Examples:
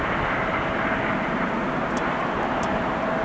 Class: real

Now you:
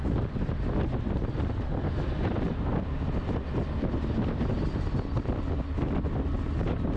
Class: real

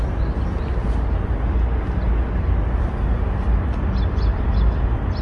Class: real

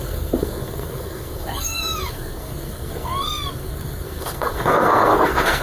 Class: fake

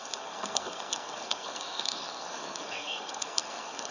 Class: fake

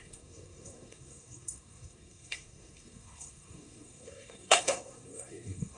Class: fake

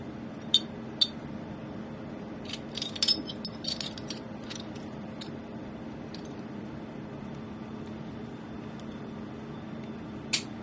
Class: real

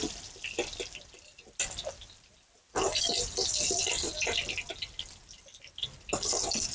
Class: real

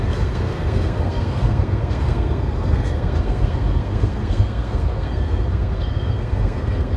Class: fake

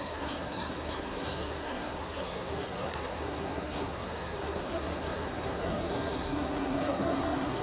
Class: fake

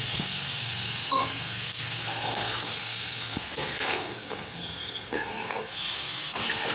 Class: fake